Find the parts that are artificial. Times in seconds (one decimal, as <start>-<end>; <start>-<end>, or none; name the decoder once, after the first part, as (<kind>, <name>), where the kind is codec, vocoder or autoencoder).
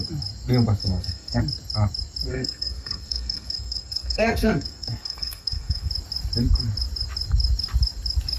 0.8-1.4 (codec, SNAC); 2.3-5.9